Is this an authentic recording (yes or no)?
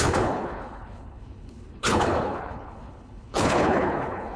no